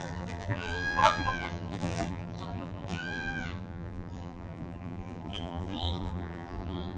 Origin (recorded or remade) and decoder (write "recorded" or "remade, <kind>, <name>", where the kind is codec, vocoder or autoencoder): remade, vocoder, BigVGAN v2